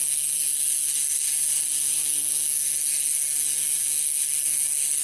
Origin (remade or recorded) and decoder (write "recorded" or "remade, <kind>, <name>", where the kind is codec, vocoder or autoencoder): remade, codec, SNAC